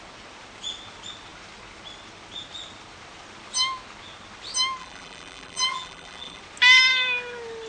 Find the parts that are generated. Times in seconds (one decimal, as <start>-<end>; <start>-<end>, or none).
4.8-6.4